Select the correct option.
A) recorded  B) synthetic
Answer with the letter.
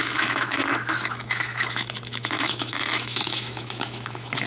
B